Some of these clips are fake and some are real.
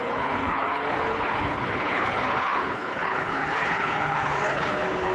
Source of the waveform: fake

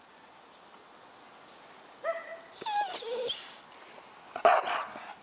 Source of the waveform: real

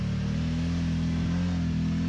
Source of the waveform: real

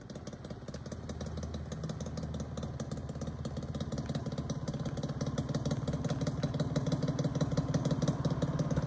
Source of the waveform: real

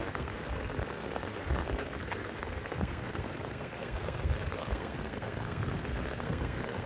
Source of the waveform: fake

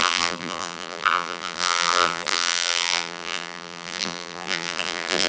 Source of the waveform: fake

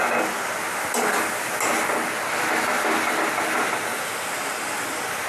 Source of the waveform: real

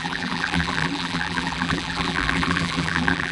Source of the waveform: fake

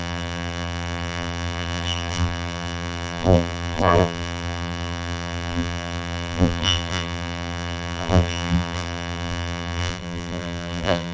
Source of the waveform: fake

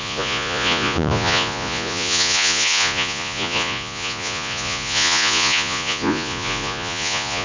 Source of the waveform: fake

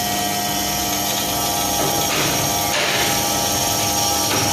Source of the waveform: real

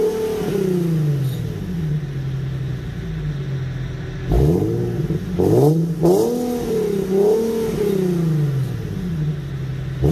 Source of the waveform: real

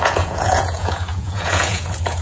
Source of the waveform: fake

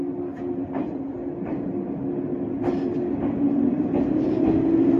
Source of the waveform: real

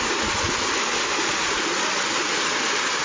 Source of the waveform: real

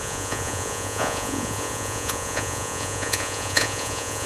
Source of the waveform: fake